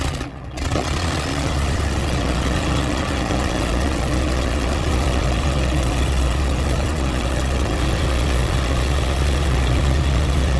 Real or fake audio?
fake